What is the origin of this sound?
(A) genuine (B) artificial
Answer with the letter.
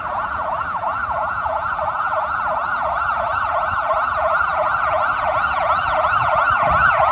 B